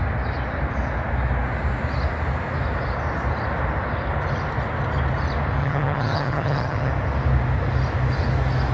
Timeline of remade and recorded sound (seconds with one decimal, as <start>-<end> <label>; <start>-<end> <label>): 0.0-5.6 recorded; 5.6-6.9 remade; 6.9-8.7 recorded